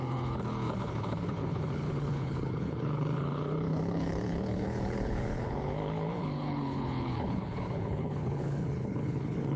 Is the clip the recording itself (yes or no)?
no